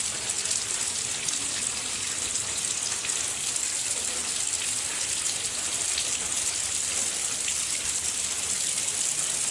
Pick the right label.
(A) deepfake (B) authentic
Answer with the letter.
B